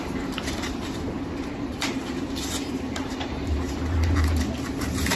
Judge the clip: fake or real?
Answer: fake